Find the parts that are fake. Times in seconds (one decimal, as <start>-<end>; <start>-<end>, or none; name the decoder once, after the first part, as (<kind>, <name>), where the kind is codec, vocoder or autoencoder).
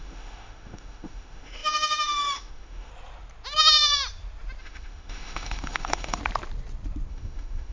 0.0-2.9 (autoencoder, DAC-VAE); 4.6-6.2; 7.1-7.7